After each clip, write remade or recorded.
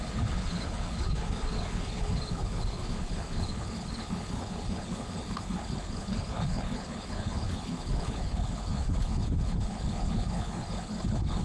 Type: remade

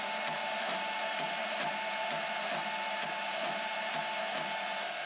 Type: recorded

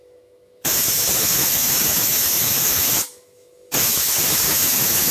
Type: remade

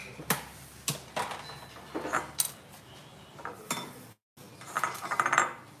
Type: recorded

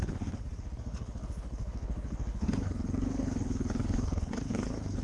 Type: remade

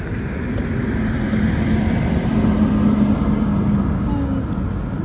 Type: recorded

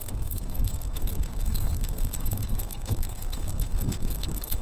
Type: remade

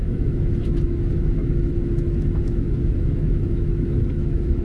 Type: remade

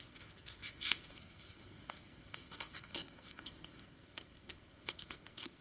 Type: remade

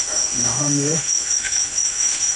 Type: remade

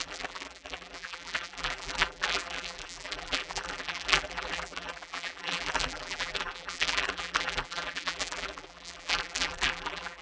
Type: remade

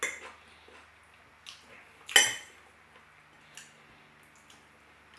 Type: recorded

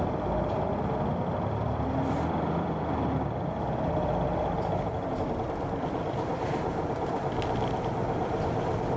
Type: remade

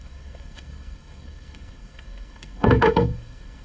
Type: remade